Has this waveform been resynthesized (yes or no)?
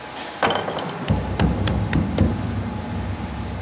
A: no